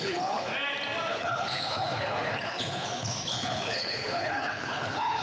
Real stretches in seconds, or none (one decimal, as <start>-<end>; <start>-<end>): 0.5-1.1